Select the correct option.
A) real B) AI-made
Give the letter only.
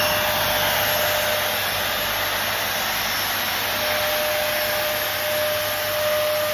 A